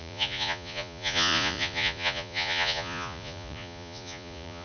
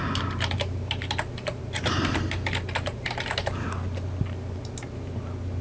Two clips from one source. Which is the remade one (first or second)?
first